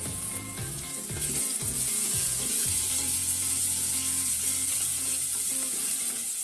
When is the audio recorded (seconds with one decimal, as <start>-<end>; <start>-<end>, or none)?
5.1-6.0